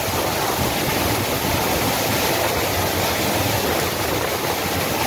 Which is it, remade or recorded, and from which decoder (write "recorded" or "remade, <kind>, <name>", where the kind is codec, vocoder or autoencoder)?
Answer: recorded